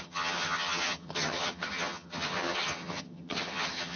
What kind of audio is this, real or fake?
fake